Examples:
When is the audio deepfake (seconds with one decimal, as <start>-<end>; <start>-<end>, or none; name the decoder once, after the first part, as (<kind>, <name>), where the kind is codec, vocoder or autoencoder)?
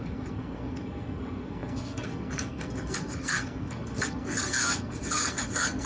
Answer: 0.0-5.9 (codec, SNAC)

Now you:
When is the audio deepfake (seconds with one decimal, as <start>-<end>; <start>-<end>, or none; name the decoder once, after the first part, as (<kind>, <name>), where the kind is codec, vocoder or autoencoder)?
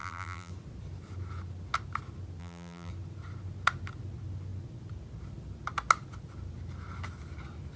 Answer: 0.0-0.5 (vocoder, BigVGAN v2); 2.4-2.9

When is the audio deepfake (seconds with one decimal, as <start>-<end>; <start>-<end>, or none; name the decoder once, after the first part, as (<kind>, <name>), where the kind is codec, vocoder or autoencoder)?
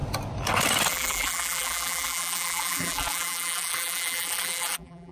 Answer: 0.9-5.1 (vocoder, BigVGAN v2)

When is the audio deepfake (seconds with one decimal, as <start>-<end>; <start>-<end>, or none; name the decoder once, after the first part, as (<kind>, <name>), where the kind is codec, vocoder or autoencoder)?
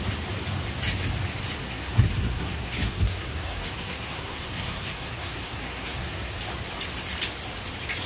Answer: 1.6-6.3 (codec, SNAC)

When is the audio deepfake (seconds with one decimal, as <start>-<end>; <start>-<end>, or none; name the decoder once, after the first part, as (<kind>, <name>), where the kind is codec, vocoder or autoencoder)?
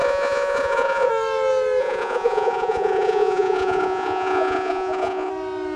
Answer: 0.0-1.1 (vocoder, Vocos); 1.8-5.3